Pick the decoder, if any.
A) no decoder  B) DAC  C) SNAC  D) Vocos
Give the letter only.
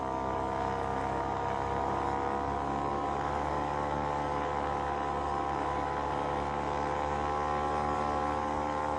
B